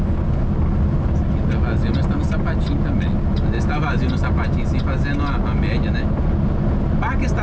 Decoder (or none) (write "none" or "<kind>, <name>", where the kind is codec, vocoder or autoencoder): none